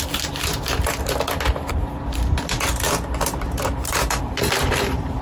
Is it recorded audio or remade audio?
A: remade